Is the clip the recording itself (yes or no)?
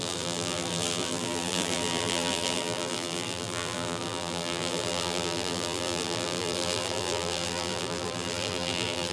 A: no